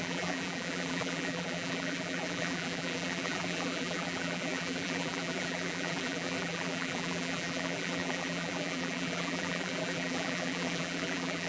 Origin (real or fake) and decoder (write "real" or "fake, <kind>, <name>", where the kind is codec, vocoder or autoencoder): fake, vocoder, BigVGAN v2